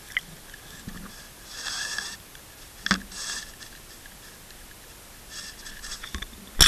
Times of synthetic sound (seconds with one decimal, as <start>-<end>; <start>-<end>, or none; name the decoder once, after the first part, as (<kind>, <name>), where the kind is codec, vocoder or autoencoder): none